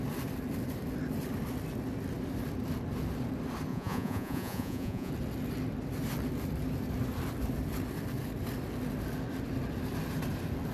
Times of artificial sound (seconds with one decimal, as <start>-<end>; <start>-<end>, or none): 3.7-5.1